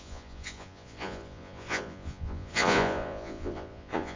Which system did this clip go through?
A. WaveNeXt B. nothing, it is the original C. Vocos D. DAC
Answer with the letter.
C